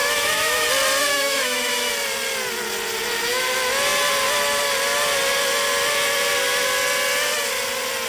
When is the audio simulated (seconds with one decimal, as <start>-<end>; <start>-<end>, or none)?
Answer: 0.0-0.7; 1.1-1.9